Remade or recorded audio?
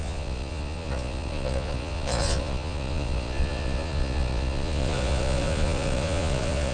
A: remade